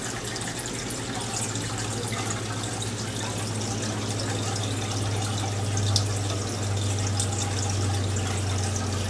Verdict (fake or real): real